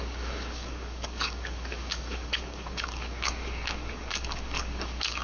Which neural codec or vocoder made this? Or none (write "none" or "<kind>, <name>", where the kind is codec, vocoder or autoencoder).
codec, DAC